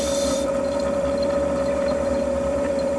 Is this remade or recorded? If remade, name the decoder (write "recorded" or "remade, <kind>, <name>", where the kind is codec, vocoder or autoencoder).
remade, vocoder, BigVGAN v2